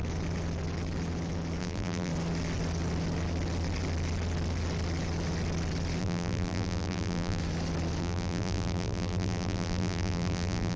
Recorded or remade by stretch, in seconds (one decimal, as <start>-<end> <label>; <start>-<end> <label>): 0.0-1.6 recorded; 1.6-2.1 remade; 2.1-6.0 recorded; 6.0-7.4 remade; 7.4-8.0 recorded; 8.0-10.8 remade